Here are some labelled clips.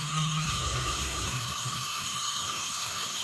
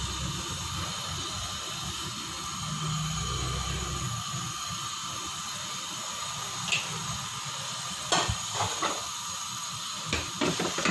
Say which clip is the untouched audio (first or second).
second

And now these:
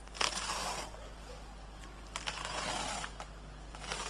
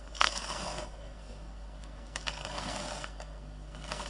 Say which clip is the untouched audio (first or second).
first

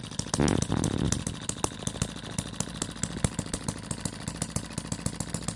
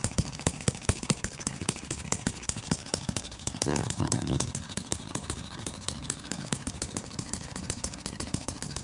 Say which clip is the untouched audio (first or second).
first